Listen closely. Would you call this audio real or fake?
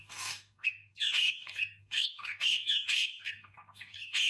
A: fake